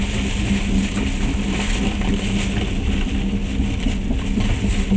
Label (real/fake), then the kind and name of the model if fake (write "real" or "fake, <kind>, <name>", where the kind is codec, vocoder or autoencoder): real